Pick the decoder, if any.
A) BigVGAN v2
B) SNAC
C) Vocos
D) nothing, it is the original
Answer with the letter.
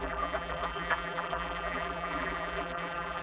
A